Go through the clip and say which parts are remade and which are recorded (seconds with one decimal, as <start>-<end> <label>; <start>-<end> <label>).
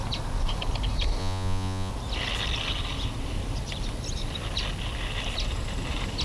0.0-1.2 recorded; 1.2-1.9 remade; 1.9-6.2 recorded